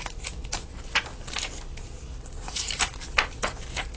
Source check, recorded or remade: recorded